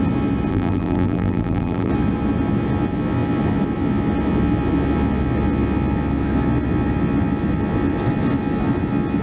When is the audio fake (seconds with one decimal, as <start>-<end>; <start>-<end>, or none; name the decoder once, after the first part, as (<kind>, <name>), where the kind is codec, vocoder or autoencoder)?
0.5-1.9 (vocoder, BigVGAN v2)